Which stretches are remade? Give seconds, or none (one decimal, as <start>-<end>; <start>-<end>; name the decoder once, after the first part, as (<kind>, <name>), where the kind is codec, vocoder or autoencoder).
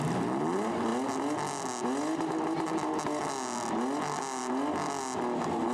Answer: none